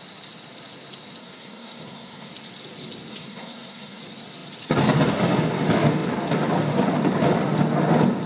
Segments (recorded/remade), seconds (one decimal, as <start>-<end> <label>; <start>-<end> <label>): 0.0-1.2 recorded; 1.2-2.3 remade; 2.3-3.1 recorded; 3.1-4.0 remade; 4.0-8.3 recorded